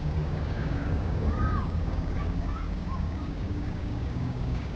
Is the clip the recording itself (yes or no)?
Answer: no